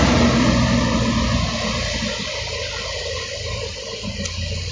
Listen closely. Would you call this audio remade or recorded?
recorded